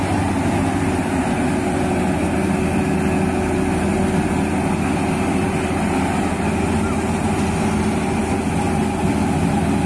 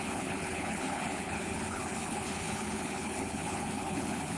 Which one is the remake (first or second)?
second